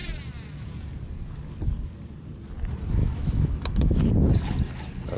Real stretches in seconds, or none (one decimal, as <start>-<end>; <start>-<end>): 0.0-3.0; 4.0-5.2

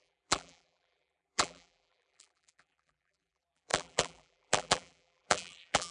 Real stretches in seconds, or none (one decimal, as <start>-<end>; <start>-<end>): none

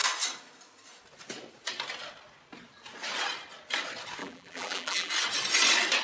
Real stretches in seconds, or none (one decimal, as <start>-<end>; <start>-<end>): 0.0-4.2; 5.1-6.0

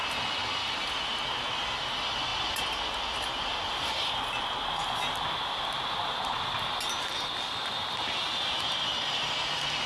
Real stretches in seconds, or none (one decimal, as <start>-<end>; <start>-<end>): 0.0-9.9